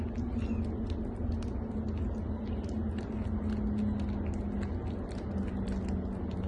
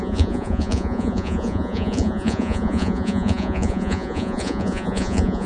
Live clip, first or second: first